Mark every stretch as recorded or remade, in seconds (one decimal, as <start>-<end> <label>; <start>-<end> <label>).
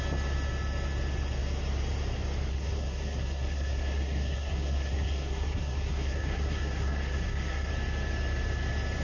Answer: 0.0-2.5 recorded; 2.5-7.7 remade; 7.7-9.0 recorded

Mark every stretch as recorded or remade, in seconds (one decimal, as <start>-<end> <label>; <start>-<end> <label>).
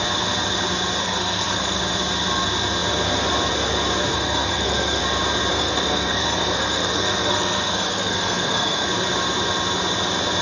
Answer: 0.0-1.0 recorded; 1.0-1.8 remade; 1.8-4.1 recorded; 4.1-5.0 remade; 5.0-5.5 recorded; 5.5-8.9 remade; 8.9-10.4 recorded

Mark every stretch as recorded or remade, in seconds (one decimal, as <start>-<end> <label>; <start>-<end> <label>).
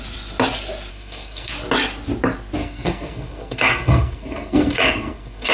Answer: 0.0-0.9 recorded; 0.9-1.5 remade; 1.5-2.6 recorded; 2.6-5.5 remade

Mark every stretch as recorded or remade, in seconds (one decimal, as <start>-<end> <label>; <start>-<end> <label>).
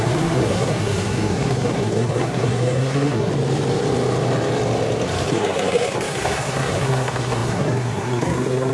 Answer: 0.0-3.3 remade; 3.3-5.3 recorded; 5.3-8.7 remade